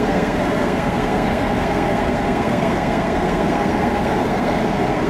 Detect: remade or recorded remade